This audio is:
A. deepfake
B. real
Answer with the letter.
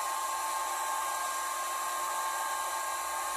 B